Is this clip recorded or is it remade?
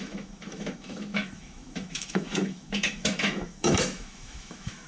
remade